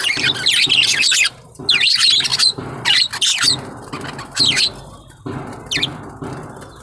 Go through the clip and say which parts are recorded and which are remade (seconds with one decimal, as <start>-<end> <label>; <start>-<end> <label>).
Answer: 0.0-6.8 recorded